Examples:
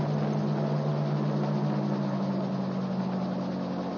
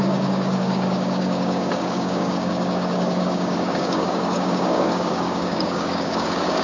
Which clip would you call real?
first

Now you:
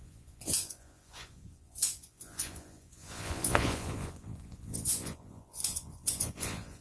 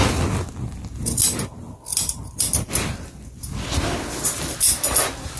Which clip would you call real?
second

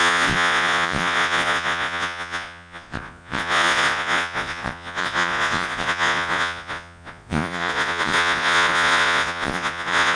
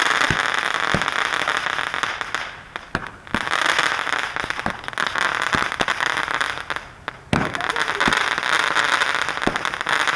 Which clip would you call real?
second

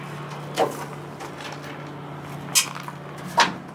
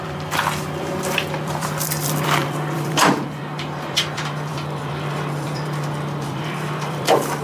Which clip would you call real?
first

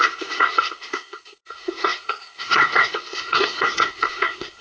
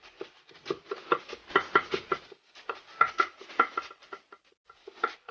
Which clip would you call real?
second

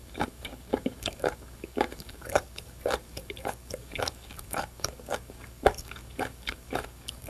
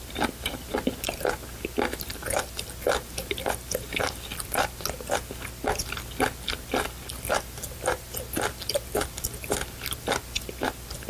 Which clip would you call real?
second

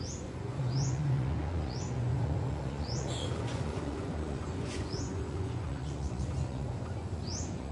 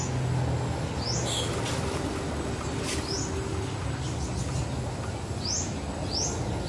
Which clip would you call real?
second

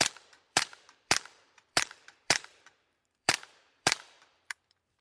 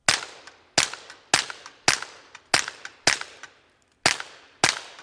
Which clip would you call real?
second